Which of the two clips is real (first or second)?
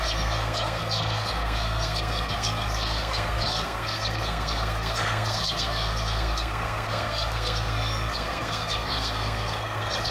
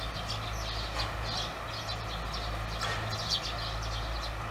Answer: second